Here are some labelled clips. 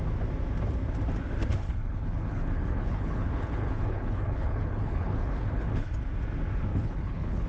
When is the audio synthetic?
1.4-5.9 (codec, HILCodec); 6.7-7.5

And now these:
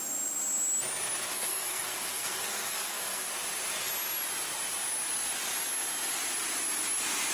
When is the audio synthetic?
1.3-3.3 (codec, SNAC)

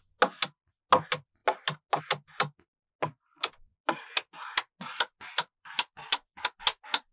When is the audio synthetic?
none

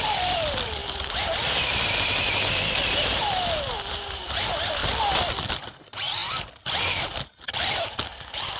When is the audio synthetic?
0.0-4.8 (vocoder, BigVGAN v2); 5.5-6.2; 7.0-8.6

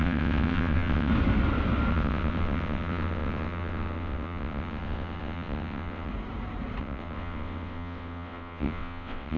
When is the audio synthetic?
0.0-1.1 (vocoder, WaveNeXt); 1.9-6.1; 6.8-9.4

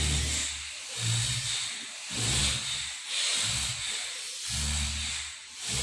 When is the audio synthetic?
none

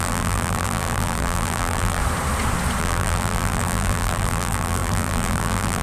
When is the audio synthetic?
0.0-2.0 (vocoder, BigVGAN v2); 2.8-5.8

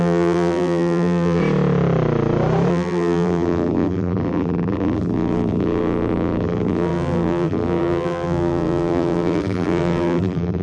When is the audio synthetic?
0.0-1.4 (vocoder, BigVGAN v2); 2.7-10.6